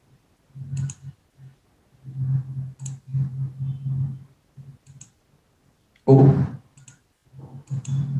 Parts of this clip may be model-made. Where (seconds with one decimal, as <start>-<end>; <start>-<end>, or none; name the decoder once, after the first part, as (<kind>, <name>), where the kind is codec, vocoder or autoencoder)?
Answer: none